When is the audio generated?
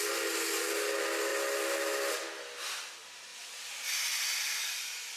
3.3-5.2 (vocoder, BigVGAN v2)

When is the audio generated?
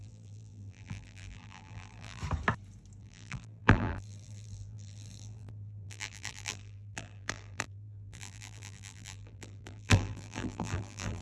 0.0-2.2 (vocoder, BigVGAN v2); 3.0-11.2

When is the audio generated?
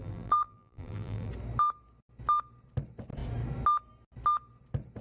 0.0-1.3 (vocoder, BigVGAN v2)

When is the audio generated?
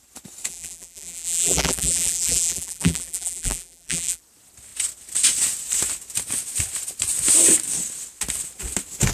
0.5-4.2 (vocoder, BigVGAN v2)